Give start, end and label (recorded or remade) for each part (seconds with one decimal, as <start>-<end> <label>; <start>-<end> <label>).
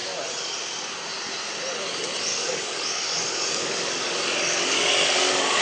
0.0-2.3 recorded; 2.3-5.6 remade